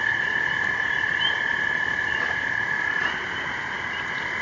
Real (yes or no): no